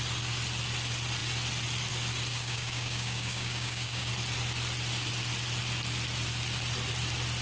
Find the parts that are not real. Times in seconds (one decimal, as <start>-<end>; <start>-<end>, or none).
2.3-4.1